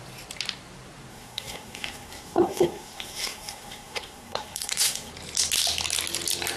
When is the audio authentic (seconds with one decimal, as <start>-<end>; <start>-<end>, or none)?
0.0-1.1; 5.1-6.6